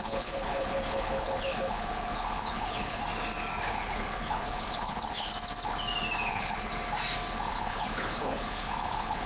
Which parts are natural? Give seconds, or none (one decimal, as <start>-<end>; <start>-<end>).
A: 3.0-3.7; 5.3-6.3; 6.7-7.5